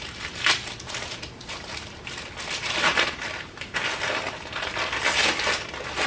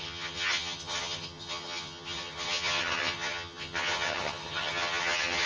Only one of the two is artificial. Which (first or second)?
second